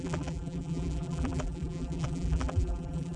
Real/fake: fake